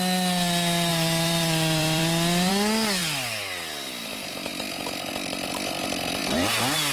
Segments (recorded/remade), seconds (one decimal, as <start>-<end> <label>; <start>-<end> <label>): 0.0-0.9 recorded; 0.9-2.5 remade; 2.5-6.9 recorded